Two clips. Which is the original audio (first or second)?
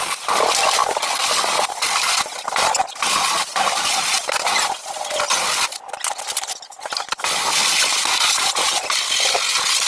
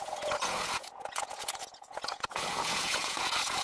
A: first